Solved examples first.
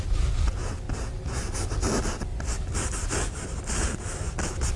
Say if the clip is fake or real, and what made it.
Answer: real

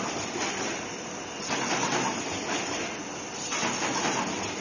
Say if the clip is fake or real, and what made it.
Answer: real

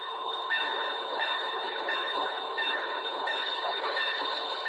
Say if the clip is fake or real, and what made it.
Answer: fake, codec, HILCodec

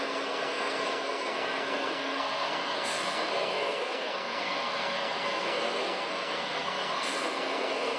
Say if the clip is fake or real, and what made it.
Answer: fake, codec, SNAC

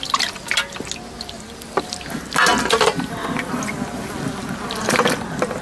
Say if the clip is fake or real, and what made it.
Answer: real